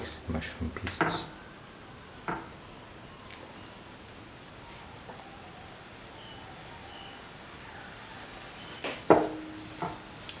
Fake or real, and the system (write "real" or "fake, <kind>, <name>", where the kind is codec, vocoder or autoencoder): real